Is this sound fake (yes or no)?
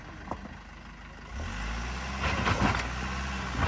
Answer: no